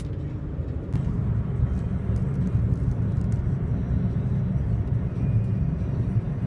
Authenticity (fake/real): real